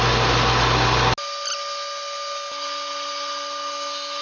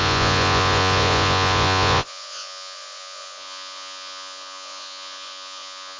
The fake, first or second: second